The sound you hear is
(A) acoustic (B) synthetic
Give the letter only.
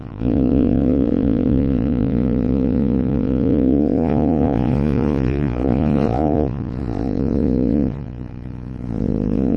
B